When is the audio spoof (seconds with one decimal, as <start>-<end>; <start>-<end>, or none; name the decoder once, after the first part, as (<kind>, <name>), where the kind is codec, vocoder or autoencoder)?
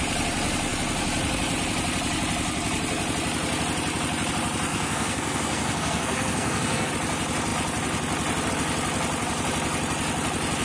4.7-6.9 (codec, SNAC)